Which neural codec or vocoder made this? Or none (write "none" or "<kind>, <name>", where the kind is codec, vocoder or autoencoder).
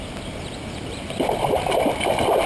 none